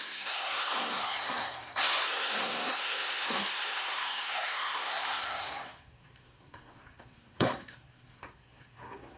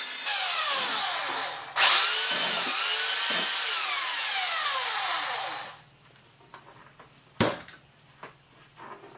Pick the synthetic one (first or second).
first